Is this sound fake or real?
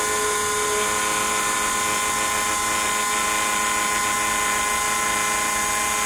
real